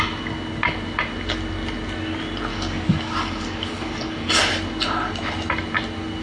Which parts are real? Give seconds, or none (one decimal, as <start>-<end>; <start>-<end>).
0.0-2.5; 4.4-6.2